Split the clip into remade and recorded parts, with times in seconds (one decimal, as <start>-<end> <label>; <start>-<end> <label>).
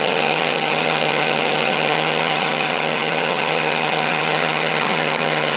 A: 0.0-5.6 remade